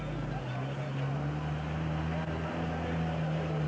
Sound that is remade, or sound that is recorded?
recorded